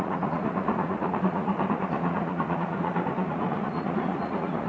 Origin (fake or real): fake